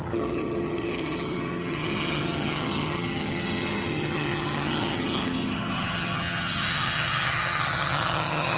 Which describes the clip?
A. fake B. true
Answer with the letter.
A